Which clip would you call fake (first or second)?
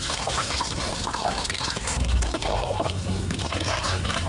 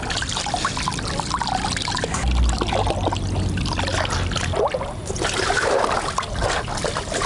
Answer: first